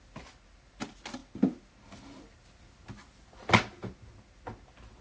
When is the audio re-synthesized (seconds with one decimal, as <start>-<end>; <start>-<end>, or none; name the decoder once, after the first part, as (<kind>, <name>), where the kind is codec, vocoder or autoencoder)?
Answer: none